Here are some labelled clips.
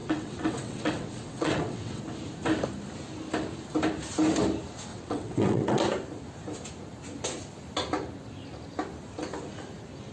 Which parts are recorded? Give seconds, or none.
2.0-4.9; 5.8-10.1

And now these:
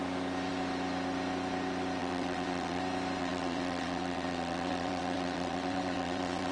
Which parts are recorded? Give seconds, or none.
0.0-2.0; 2.8-3.2

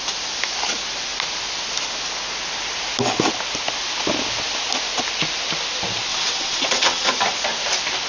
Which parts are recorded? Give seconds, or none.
0.0-6.1; 7.1-8.1

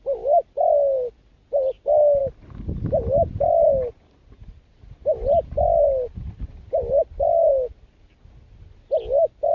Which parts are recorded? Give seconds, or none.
0.0-9.5

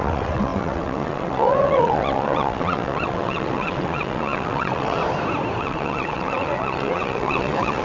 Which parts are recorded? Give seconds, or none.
5.0-5.6

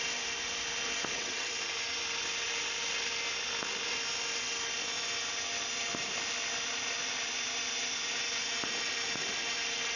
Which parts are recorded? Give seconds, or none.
0.0-1.0; 1.5-10.0

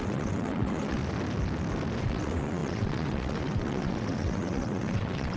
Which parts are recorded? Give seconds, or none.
1.0-2.0

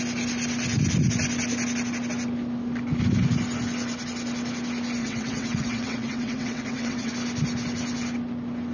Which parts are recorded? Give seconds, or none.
0.0-5.0; 7.1-8.7